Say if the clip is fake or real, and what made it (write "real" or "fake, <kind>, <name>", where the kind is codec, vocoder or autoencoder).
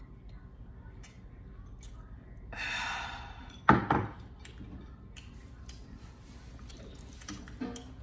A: real